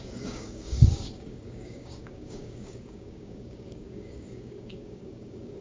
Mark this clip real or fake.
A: fake